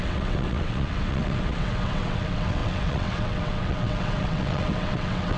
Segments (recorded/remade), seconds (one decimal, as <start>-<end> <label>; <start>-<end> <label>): 0.0-5.4 remade